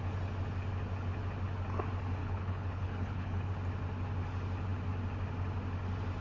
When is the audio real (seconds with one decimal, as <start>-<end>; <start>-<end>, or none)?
0.0-2.2; 3.5-6.2